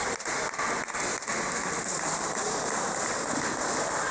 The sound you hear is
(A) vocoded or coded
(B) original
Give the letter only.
B